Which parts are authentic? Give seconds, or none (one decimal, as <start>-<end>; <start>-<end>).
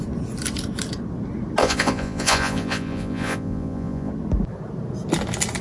0.0-1.6; 4.1-5.6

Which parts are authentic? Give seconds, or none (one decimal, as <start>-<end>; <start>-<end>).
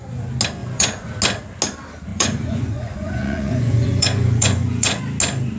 0.0-0.6; 1.1-2.1; 5.0-5.6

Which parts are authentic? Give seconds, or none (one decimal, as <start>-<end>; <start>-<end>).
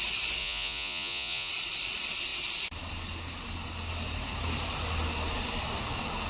0.0-0.4; 1.5-6.3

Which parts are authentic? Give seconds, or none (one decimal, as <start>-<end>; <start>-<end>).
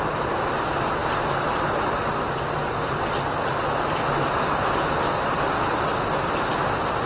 0.0-7.1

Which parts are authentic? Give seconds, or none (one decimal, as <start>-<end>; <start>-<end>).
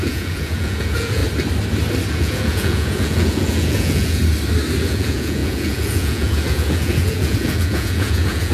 1.2-2.1; 4.2-4.8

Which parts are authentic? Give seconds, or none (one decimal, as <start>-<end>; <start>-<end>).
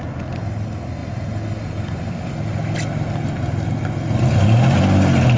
0.0-5.4